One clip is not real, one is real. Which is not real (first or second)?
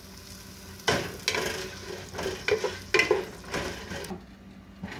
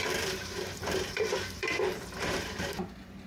second